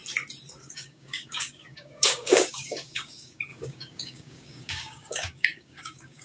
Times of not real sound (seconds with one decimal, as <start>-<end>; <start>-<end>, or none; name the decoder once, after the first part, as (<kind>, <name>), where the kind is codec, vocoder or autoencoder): 0.6-6.2 (codec, DAC)